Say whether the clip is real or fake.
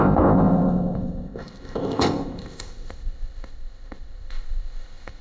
fake